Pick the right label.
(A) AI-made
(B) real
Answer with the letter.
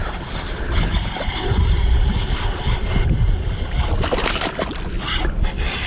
B